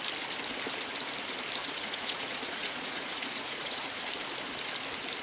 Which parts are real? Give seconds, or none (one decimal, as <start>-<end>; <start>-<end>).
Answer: 0.0-1.6; 3.9-5.2